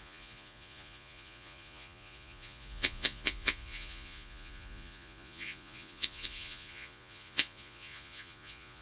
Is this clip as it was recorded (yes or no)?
no